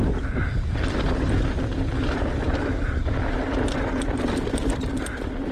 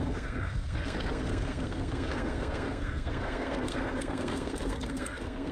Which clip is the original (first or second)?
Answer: first